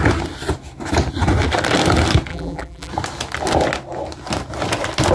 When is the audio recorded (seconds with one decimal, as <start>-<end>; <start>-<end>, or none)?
0.0-2.3; 2.9-5.1